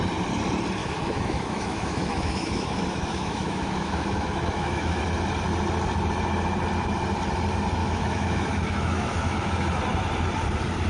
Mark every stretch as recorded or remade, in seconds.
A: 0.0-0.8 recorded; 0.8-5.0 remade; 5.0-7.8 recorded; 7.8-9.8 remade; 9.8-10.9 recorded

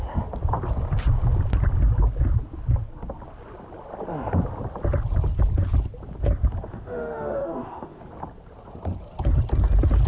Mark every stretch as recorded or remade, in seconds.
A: 0.0-6.7 recorded; 6.7-8.0 remade; 8.0-10.1 recorded

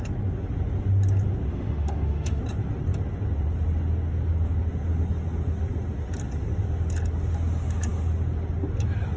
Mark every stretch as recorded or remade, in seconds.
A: 0.0-1.5 recorded; 1.5-2.4 remade; 2.4-9.2 recorded

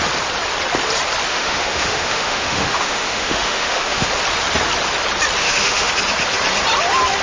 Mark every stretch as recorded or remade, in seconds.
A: 0.0-1.3 recorded; 1.3-4.1 remade; 4.1-5.4 recorded; 5.4-5.9 remade; 5.9-7.2 recorded

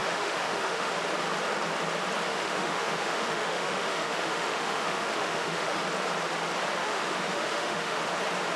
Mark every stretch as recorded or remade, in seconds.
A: 0.0-0.9 remade; 0.9-2.3 recorded; 2.3-5.8 remade; 5.8-6.8 recorded; 6.8-8.1 remade; 8.1-8.6 recorded

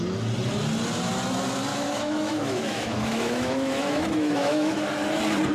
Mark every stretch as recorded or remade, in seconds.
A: 0.0-1.7 recorded; 1.7-4.8 remade; 4.8-5.5 recorded

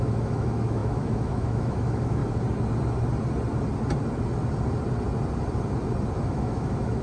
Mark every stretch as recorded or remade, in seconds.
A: 0.0-2.2 remade; 2.2-6.2 recorded; 6.2-7.0 remade